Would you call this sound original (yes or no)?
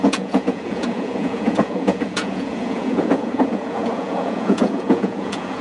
no